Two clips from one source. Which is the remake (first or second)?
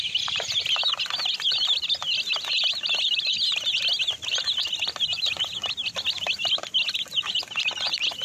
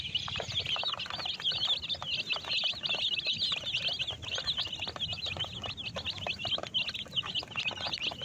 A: first